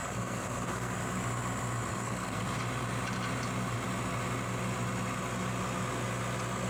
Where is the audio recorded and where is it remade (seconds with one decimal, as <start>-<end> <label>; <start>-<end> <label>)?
0.0-1.0 remade; 1.0-1.9 recorded; 1.9-2.4 remade; 2.4-6.7 recorded